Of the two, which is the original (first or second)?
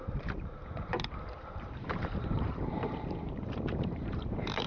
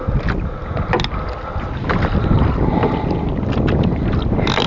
second